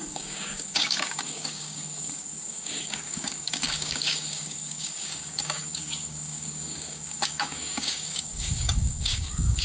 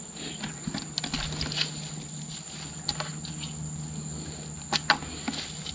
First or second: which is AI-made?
first